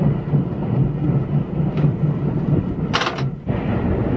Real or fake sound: real